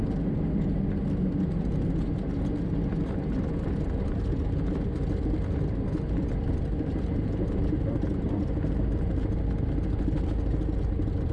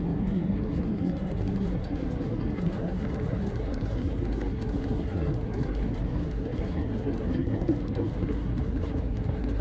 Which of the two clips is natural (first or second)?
first